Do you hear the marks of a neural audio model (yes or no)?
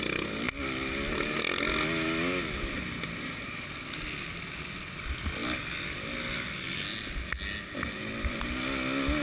no